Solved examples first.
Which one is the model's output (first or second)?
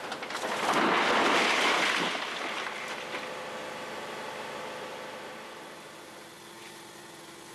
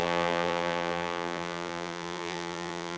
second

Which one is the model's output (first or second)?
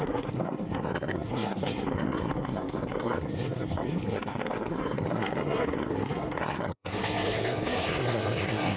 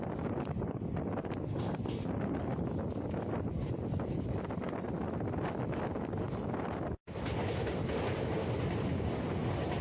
first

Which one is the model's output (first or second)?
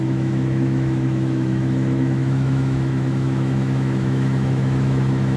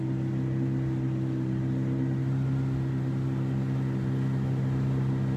first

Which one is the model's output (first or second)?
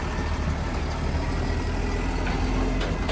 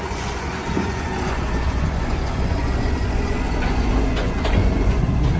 second